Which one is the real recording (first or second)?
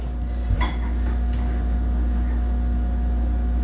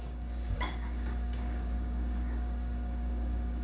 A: first